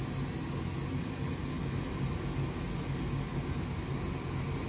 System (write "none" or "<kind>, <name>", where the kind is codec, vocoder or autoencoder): none